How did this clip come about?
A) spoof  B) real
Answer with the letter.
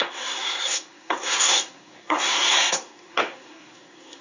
A